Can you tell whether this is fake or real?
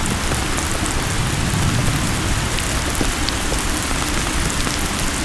real